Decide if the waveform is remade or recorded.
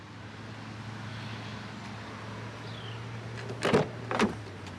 recorded